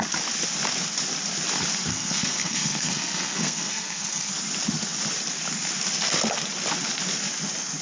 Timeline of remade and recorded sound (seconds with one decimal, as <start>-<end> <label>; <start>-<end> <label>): 0.0-1.9 recorded; 1.9-4.3 remade; 4.3-7.8 recorded